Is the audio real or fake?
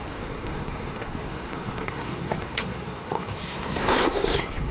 fake